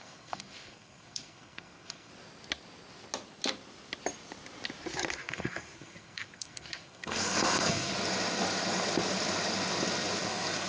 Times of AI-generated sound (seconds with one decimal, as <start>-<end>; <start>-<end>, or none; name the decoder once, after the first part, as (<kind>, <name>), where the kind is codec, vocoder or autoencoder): 0.0-2.1 (codec, SNAC); 5.2-7.9; 10.2-10.7